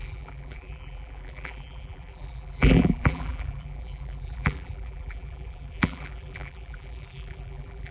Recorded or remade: remade